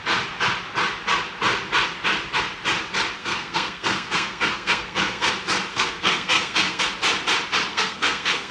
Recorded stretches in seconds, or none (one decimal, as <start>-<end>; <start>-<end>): 0.0-3.2; 5.3-5.7; 6.8-7.7